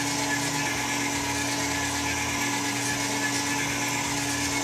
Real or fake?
real